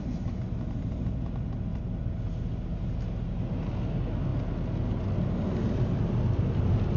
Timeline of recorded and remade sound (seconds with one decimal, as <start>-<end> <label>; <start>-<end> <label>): 0.0-7.0 recorded